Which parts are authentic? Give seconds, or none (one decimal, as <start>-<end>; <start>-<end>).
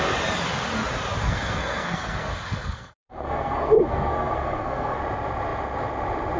0.0-1.2; 5.0-6.4